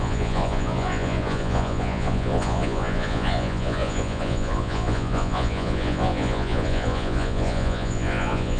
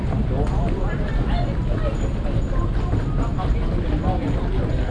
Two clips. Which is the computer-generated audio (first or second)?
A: first